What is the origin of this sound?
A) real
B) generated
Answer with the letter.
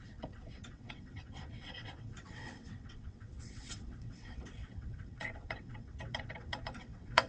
B